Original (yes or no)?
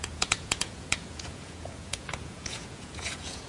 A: no